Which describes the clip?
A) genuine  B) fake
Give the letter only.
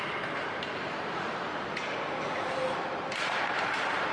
B